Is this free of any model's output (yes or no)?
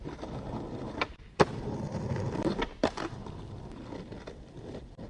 no